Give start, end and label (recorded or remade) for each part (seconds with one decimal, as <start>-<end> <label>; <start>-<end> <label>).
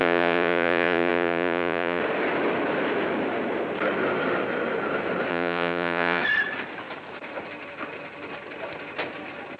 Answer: 0.0-2.0 remade; 2.0-5.3 recorded; 5.3-6.2 remade; 6.2-9.6 recorded